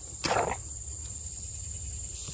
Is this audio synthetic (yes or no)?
no